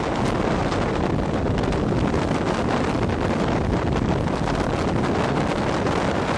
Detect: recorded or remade recorded